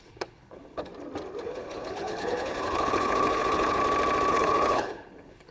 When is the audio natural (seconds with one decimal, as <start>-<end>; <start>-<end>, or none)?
0.9-1.4; 3.8-4.3